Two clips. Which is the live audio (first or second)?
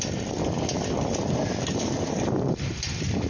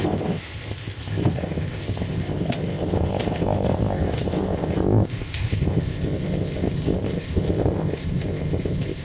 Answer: first